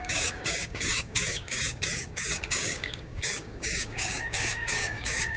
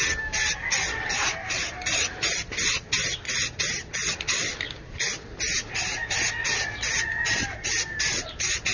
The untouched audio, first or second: second